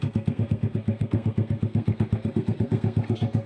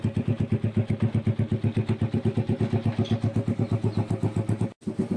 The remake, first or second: first